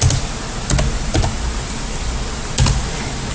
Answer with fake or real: real